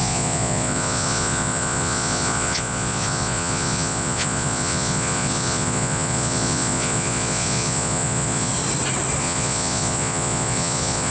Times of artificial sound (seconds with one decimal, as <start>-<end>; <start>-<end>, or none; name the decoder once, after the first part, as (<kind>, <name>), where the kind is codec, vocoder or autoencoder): 0.0-8.5 (vocoder, Vocos); 9.2-11.1